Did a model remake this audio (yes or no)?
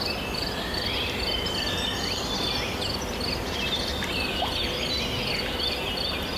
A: no